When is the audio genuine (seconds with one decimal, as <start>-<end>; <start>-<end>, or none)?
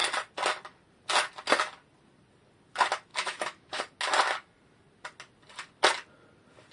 0.0-3.1; 3.8-6.7